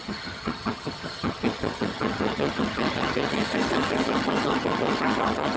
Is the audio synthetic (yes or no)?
yes